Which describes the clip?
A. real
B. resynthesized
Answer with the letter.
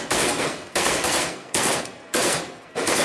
B